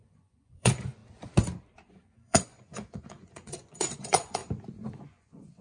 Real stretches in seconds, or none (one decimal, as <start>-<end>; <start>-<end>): 1.0-1.9; 4.4-4.9